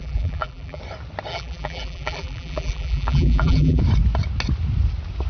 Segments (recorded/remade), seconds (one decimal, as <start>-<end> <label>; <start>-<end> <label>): 0.0-0.8 remade; 0.8-1.3 recorded; 1.3-3.8 remade; 3.8-5.3 recorded